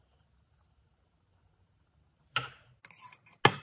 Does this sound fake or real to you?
real